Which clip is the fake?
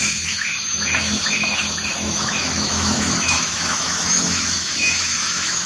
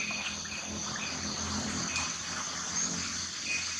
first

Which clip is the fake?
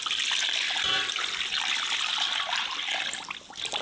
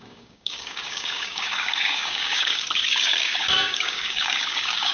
second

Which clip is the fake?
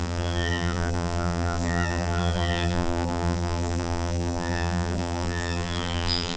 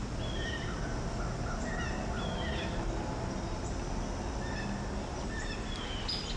first